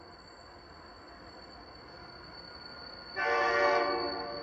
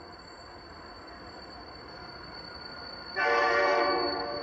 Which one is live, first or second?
first